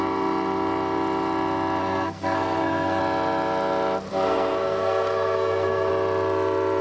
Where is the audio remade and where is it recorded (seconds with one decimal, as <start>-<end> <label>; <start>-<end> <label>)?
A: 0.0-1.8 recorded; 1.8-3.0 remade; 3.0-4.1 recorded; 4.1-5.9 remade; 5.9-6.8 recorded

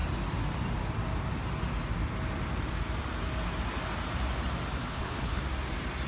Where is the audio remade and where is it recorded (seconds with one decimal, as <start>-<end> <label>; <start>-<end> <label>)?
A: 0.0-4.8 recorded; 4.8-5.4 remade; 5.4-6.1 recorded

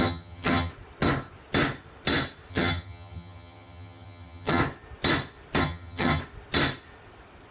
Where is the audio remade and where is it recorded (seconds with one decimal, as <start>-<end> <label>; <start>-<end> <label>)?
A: 0.0-0.7 remade; 0.7-2.5 recorded; 2.5-4.6 remade; 4.6-5.6 recorded; 5.6-6.2 remade; 6.2-7.5 recorded

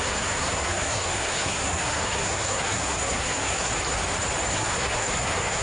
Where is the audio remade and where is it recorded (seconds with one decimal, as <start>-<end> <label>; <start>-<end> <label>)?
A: 0.0-3.7 remade; 3.7-4.5 recorded; 4.5-5.6 remade

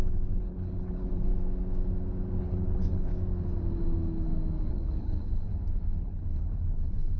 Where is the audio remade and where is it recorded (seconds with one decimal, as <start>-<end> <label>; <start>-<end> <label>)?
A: 0.0-1.3 remade; 1.3-2.4 recorded; 2.4-3.1 remade; 3.1-4.7 recorded; 4.7-5.5 remade; 5.5-6.0 recorded; 6.0-7.2 remade